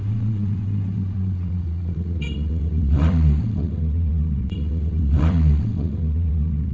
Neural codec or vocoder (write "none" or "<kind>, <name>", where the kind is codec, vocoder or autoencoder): vocoder, WaveNeXt